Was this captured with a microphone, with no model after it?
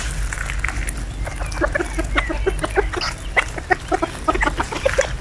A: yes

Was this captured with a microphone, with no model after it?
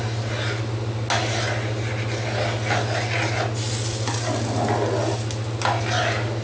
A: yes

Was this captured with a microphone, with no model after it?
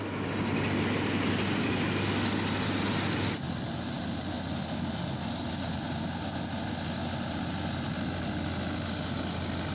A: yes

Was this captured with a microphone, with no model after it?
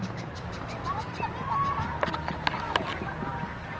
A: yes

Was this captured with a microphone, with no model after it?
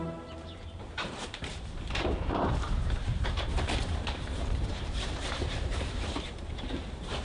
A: no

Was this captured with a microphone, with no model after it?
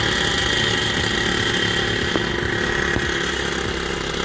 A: yes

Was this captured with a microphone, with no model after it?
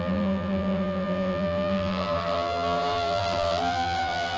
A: no